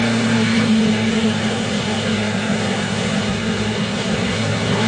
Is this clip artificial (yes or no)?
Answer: yes